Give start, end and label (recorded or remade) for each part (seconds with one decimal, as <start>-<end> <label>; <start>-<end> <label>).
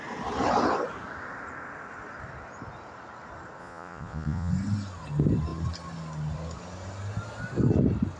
0.0-3.6 recorded; 3.6-4.5 remade; 4.5-8.2 recorded